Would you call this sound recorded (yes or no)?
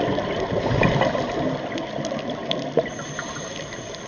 yes